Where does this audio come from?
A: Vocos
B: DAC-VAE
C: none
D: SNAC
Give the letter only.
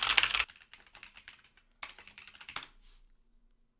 C